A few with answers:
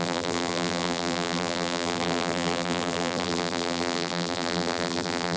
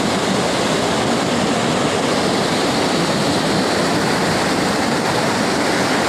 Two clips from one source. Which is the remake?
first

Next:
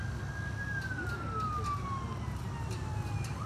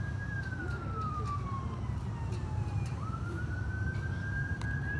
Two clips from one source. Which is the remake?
second